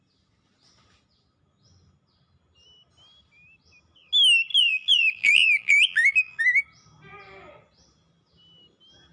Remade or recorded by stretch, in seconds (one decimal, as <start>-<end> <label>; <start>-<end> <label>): 0.0-4.5 recorded; 4.5-6.4 remade; 6.4-9.1 recorded